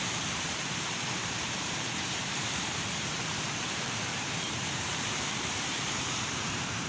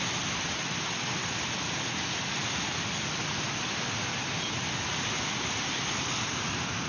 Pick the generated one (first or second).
first